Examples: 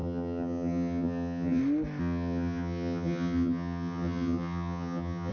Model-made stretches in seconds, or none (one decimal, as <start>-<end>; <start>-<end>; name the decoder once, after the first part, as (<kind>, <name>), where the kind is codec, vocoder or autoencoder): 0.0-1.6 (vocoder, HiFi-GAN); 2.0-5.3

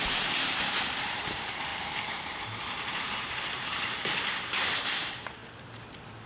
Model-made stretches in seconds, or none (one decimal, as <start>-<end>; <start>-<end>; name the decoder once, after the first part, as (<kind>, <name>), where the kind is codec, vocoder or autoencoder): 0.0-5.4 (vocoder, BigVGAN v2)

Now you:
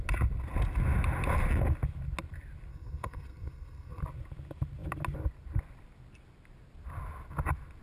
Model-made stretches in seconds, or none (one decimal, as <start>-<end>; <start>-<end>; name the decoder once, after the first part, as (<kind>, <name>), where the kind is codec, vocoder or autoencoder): 2.7-4.0 (codec, SNAC)

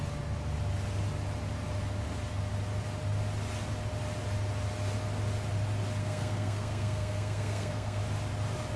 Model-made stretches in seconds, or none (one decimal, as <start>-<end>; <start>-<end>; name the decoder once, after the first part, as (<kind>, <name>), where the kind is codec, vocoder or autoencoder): 6.0-8.0 (codec, SNAC)

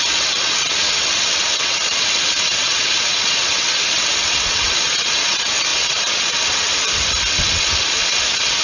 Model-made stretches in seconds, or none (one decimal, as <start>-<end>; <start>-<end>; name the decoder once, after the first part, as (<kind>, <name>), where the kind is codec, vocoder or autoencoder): 0.0-6.7 (vocoder, WaveNeXt); 7.4-8.6

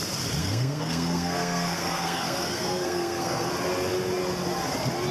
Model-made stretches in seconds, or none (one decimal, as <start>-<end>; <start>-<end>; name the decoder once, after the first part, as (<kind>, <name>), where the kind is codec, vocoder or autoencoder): 0.4-3.5 (codec, SNAC)

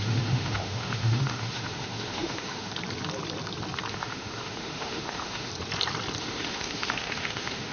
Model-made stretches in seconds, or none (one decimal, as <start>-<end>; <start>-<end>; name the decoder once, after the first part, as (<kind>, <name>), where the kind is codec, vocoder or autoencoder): 0.0-2.7 (autoencoder, DAC-VAE); 3.9-5.5; 6.2-7.7

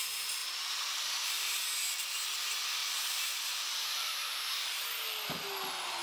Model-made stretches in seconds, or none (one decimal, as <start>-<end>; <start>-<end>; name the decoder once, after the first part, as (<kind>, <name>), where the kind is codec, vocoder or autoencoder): 0.4-1.0 (vocoder, BigVGAN v2); 2.8-4.8